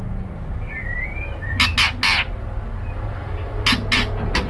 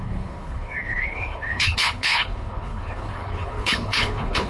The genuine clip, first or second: first